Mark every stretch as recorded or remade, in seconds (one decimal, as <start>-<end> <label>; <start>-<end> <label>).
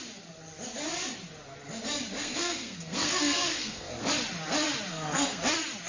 0.0-2.2 recorded; 2.2-4.1 remade; 4.1-4.9 recorded; 4.9-5.4 remade; 5.4-5.9 recorded